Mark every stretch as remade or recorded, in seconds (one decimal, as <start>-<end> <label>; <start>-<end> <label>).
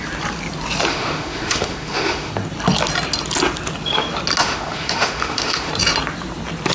0.0-0.9 recorded; 0.9-2.3 remade; 2.3-4.4 recorded; 4.4-5.7 remade; 5.7-6.7 recorded